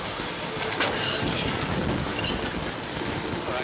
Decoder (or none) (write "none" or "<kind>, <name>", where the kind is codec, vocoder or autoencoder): none